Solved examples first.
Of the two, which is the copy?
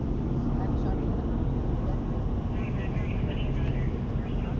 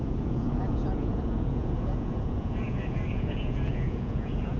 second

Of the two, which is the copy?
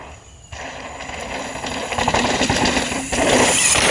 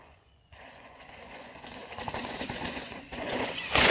second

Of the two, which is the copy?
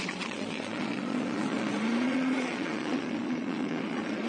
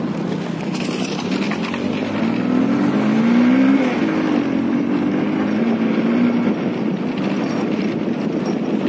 first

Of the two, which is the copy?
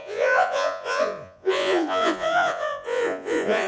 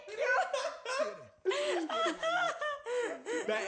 first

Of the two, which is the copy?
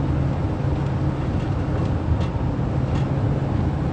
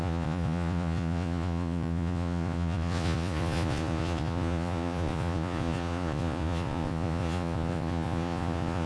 second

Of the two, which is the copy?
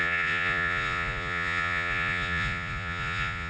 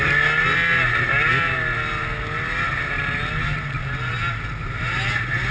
first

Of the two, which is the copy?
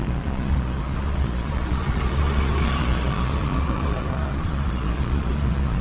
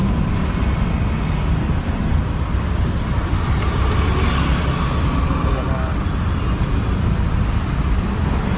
first